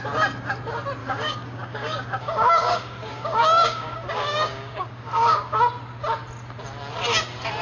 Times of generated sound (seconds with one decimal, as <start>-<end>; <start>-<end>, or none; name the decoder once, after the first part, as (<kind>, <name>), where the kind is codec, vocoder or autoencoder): 1.0-5.6 (codec, DAC)